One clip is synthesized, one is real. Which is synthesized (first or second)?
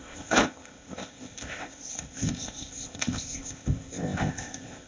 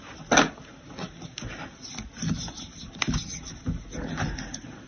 first